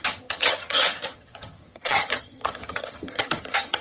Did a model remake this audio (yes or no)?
yes